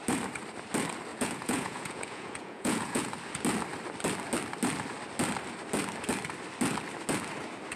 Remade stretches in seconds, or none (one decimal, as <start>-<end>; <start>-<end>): 1.1-3.1

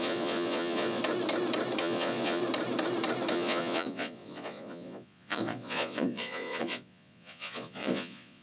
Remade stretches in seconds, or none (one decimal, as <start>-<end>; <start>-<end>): 0.0-1.0; 1.8-2.4; 3.3-8.4

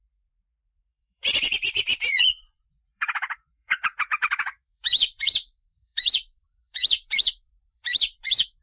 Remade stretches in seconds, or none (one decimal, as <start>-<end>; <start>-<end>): 0.0-8.6

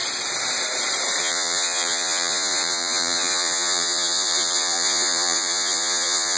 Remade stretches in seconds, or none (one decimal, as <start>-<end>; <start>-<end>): 1.2-6.4

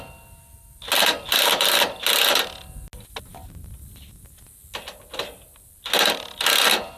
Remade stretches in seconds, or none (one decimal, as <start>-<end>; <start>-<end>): none

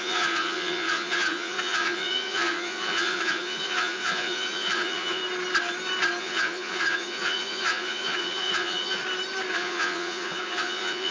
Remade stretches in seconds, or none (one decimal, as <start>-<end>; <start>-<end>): 0.0-5.2; 6.2-9.0; 9.5-11.1

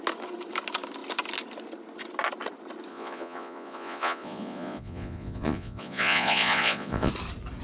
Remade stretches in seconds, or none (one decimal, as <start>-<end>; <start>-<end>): 2.9-7.1